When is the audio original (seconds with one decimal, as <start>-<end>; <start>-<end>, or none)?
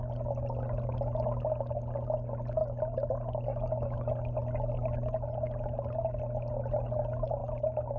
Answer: 0.0-3.5; 4.1-8.0